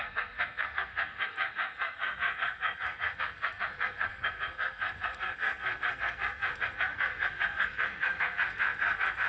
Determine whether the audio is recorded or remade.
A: remade